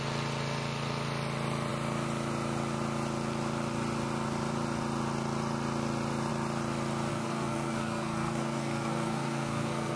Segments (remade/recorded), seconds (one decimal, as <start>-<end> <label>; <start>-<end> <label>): 0.0-7.1 recorded; 7.1-10.0 remade